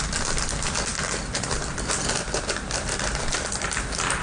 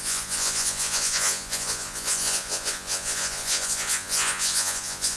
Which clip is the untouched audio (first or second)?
first